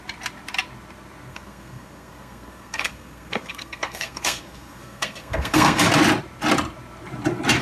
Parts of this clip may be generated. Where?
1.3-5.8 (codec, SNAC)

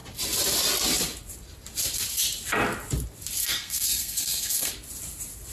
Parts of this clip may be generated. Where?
3.4-4.7 (codec, SNAC)

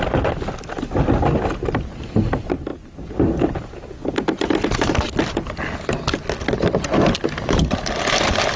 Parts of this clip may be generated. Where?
none

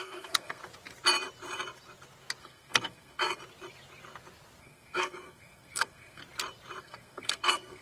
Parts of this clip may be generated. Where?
0.0-0.6 (codec, SNAC); 2.4-3.4; 4.6-6.2; 6.8-7.8

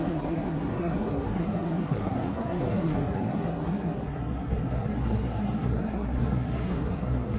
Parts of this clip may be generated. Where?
0.0-7.4 (codec, SNAC)

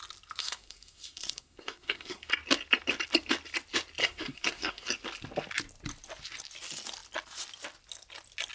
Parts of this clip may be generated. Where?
0.4-2.3 (codec, SNAC); 4.0-4.9

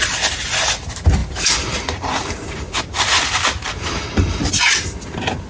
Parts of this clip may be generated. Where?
none